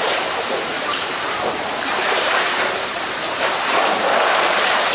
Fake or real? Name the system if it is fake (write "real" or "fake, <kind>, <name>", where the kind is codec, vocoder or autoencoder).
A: fake, vocoder, BigVGAN v2